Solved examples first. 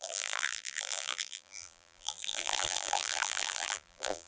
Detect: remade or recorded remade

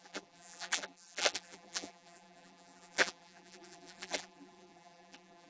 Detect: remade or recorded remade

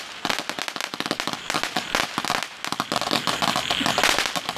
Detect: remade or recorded recorded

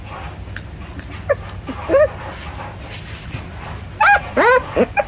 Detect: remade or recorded recorded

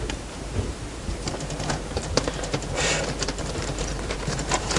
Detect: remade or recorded remade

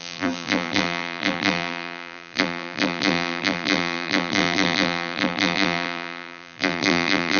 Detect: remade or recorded remade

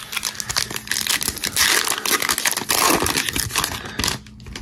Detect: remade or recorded recorded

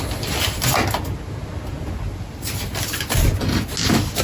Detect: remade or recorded recorded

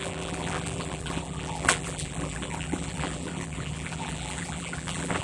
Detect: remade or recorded remade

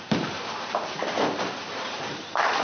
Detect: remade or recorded remade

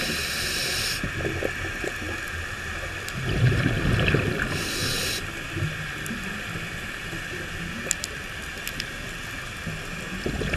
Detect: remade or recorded recorded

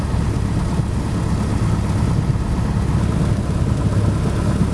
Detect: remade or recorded recorded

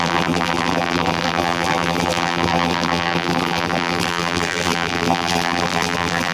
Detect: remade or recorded remade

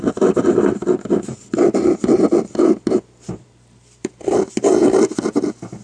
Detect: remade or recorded recorded